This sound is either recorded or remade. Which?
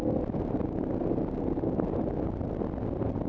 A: recorded